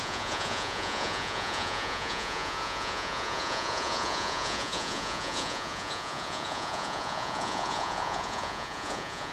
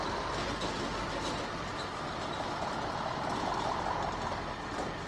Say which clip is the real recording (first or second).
second